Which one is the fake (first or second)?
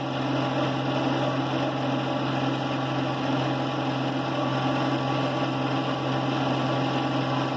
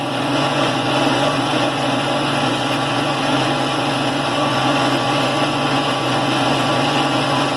second